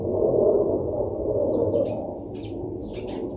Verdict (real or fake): real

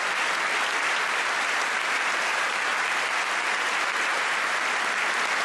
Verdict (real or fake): real